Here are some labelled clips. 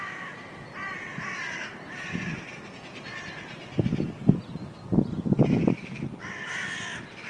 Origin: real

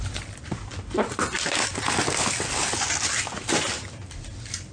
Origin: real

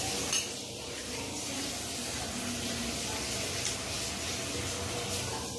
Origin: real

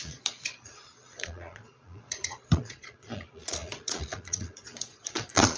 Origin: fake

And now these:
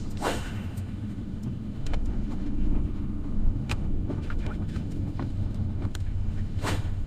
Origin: fake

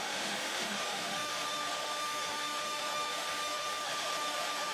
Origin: fake